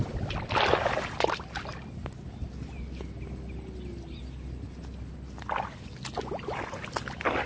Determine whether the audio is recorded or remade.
recorded